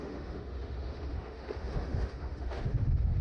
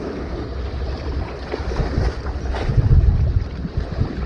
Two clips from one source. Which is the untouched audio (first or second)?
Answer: second